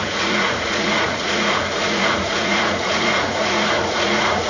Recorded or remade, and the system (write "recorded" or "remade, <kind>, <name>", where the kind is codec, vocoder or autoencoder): remade, vocoder, Vocos